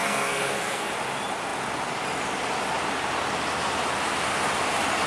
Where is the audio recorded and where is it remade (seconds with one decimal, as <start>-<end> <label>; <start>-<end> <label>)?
0.0-0.9 remade; 0.9-5.1 recorded